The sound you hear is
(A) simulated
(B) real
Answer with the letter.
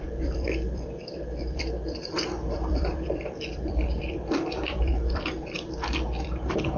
A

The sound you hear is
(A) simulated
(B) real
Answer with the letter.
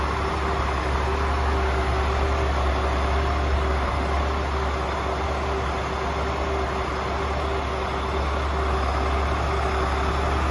B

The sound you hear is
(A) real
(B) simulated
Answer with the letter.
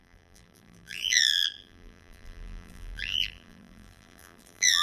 B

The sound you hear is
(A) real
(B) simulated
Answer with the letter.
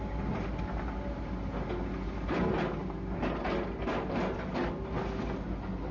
A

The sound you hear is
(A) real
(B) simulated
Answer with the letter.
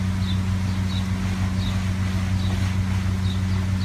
A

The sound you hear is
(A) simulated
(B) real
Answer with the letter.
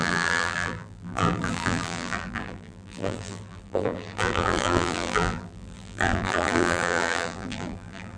A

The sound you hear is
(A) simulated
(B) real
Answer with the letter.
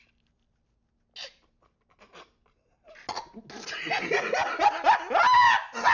B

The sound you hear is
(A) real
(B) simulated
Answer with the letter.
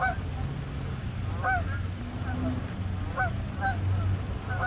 A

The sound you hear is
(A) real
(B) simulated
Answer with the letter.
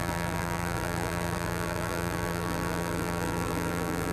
B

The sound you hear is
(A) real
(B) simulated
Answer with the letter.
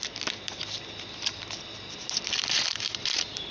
B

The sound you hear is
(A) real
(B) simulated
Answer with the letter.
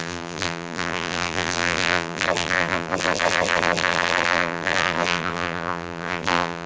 B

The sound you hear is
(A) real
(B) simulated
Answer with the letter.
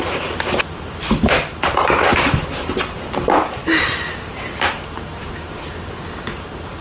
B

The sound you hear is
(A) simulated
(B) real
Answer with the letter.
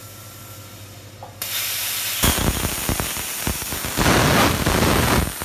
B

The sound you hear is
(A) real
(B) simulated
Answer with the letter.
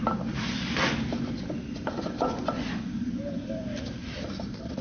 B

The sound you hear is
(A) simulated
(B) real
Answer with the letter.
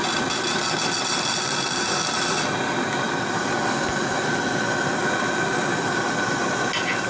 B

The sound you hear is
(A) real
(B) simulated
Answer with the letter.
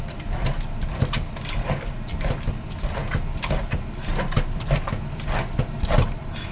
A